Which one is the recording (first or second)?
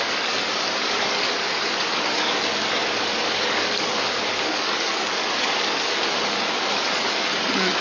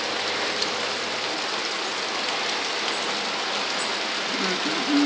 second